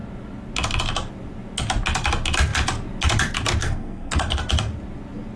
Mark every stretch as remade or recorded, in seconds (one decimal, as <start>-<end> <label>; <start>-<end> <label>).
0.0-3.6 recorded; 3.6-4.4 remade; 4.4-5.4 recorded